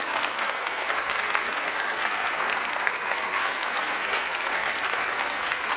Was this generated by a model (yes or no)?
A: yes